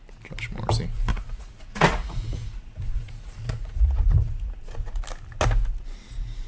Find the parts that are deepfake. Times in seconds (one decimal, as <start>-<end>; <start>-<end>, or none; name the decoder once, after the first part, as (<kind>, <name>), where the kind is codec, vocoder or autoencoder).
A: 1.1-5.0 (vocoder, Vocos)